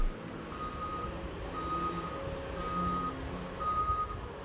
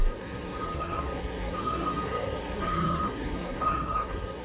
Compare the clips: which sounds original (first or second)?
first